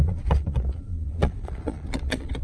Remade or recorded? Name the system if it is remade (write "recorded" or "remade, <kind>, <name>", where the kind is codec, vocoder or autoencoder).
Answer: remade, vocoder, Vocos